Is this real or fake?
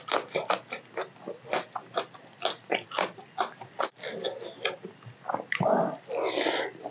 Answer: real